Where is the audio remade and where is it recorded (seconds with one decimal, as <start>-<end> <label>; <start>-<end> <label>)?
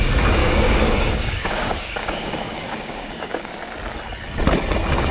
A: 0.0-0.4 recorded; 0.4-3.5 remade; 3.5-5.1 recorded